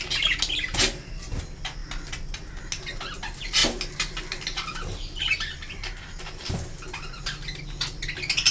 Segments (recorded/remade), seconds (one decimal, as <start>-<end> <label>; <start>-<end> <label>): 0.0-8.5 recorded